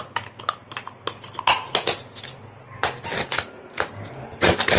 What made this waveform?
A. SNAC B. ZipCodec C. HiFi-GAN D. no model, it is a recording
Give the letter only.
D